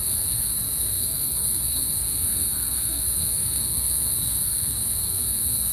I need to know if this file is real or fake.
fake